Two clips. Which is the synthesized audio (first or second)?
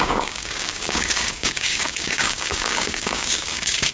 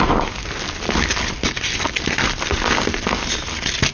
first